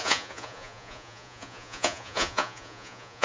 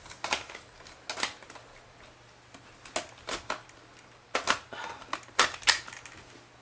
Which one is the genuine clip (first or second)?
second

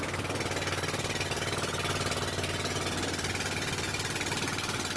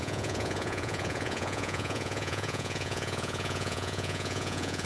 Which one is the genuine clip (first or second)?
first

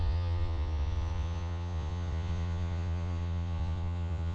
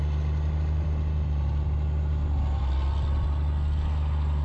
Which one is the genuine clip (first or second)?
second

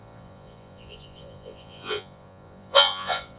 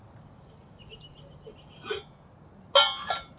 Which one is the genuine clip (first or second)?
second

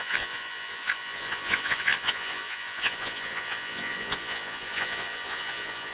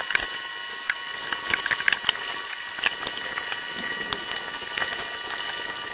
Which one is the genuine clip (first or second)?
second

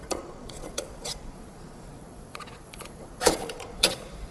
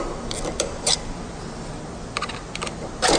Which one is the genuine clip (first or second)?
second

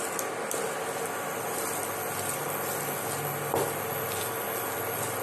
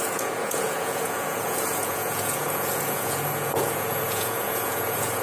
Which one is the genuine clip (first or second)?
first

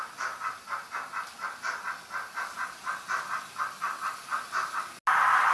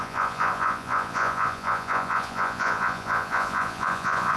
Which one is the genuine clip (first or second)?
first